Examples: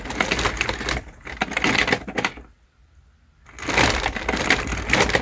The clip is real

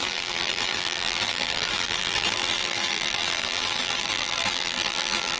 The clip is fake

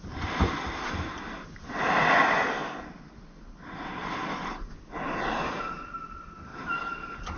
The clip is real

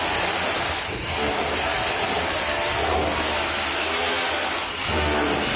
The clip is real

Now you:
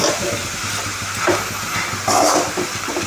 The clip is fake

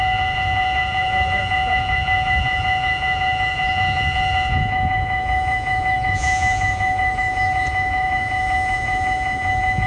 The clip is fake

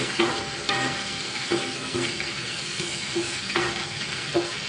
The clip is fake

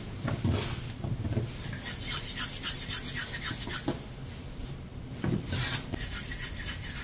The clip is real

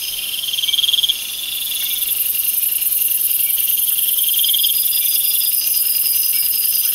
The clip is real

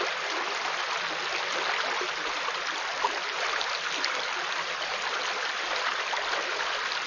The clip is real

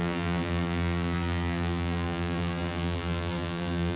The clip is fake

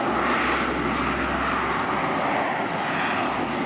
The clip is real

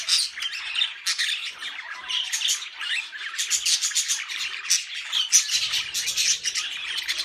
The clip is real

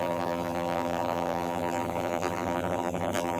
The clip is fake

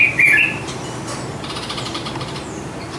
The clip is fake